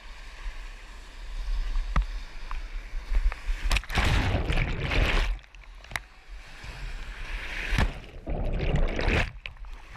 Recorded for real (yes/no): yes